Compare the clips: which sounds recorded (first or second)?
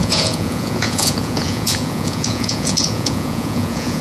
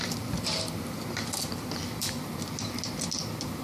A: second